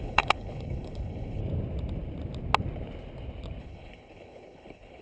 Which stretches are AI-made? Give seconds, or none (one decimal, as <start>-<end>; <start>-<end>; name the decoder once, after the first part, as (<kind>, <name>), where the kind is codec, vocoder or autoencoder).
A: 0.0-1.4 (codec, HILCodec); 3.6-5.0